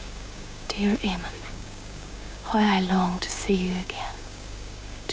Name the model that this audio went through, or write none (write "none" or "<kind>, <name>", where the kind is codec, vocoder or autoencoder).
codec, DAC